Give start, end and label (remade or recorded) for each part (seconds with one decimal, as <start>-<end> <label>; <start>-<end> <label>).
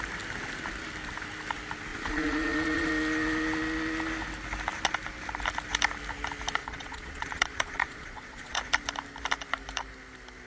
0.0-1.9 recorded; 1.9-2.9 remade; 2.9-6.6 recorded; 6.6-8.6 remade; 8.6-10.5 recorded